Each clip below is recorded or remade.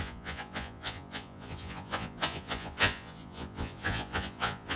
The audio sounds remade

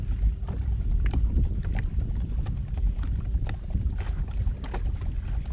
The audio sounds recorded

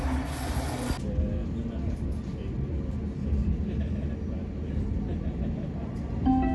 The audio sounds recorded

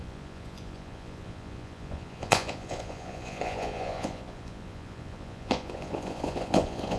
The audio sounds remade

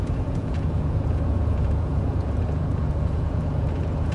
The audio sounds remade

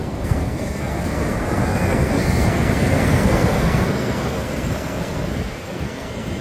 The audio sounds remade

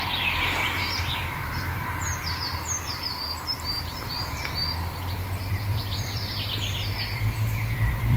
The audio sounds remade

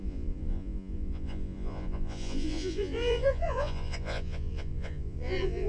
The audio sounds remade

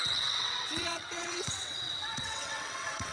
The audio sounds remade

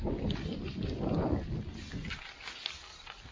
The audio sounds recorded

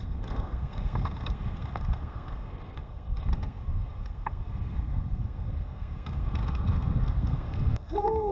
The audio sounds remade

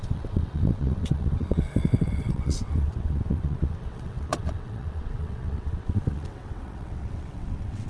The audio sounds remade